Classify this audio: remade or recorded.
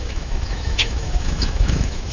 remade